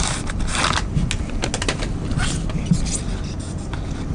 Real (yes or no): yes